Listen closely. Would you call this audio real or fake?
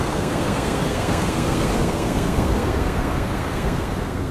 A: fake